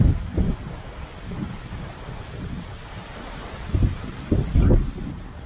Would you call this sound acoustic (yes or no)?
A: yes